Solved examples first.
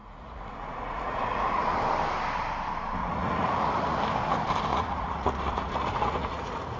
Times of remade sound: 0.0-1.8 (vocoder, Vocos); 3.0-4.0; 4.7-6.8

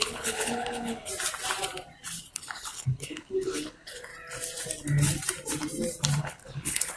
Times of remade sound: 0.0-1.1 (codec, HILCodec); 2.3-4.1; 6.2-7.0

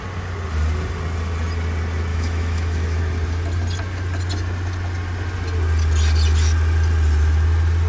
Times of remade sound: 2.1-3.0 (autoencoder, DAC-VAE)

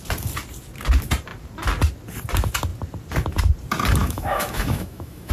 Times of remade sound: 4.0-5.3 (autoencoder, DAC-VAE)